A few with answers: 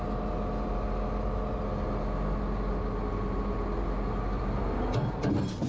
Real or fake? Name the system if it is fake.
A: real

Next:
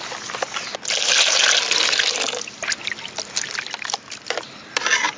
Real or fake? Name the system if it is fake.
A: real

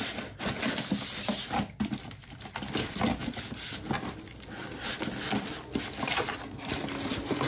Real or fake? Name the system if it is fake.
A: real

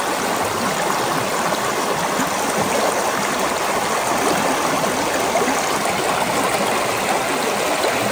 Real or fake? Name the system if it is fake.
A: real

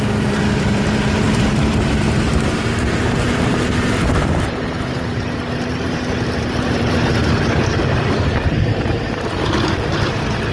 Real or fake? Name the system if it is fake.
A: fake, vocoder, BigVGAN v2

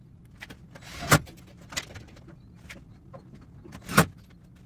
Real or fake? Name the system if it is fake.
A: real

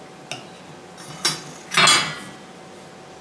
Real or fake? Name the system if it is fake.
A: real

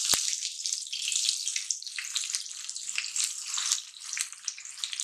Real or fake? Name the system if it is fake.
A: fake, vocoder, BigVGAN v2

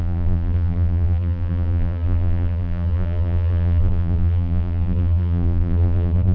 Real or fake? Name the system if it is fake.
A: fake, vocoder, BigVGAN v2